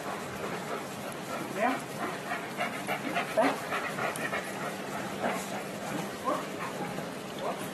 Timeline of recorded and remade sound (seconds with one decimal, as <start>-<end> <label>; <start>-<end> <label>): 0.0-4.0 recorded; 4.0-7.0 remade; 7.0-7.7 recorded